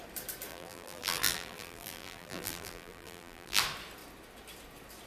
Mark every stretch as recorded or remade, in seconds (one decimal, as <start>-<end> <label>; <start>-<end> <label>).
0.0-0.5 recorded; 0.5-3.6 remade; 3.6-5.1 recorded